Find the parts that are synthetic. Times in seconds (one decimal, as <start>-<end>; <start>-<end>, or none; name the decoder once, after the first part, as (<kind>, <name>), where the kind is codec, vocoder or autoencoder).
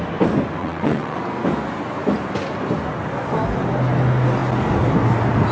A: 0.6-1.2 (vocoder, WaveNeXt)